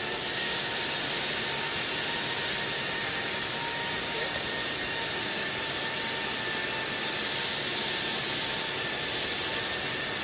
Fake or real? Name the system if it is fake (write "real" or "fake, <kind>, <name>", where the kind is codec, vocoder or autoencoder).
real